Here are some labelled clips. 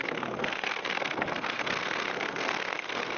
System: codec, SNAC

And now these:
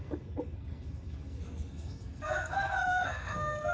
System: codec, SNAC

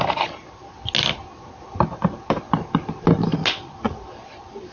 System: none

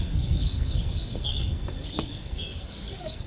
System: codec, SNAC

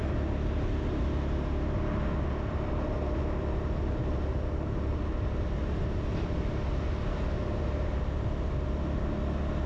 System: none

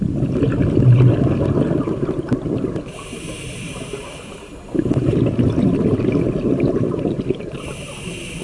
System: none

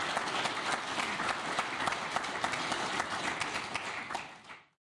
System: none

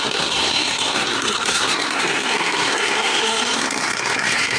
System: codec, SNAC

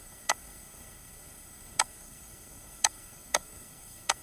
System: codec, SNAC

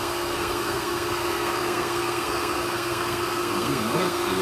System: codec, SNAC